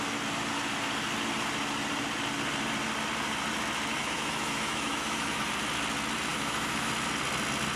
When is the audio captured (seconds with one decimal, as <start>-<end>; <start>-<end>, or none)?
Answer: 0.0-3.9; 5.5-6.3; 6.9-7.8